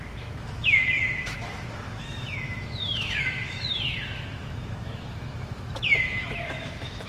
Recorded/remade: remade